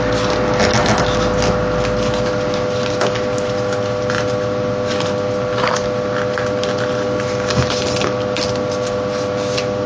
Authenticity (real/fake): real